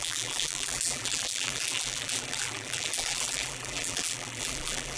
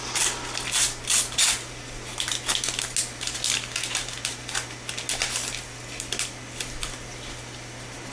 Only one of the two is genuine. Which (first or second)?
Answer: second